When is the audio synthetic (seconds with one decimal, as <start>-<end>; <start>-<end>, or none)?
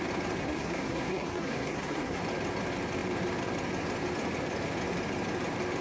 0.4-2.2